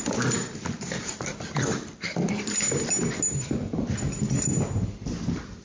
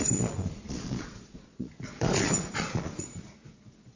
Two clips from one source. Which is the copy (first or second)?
second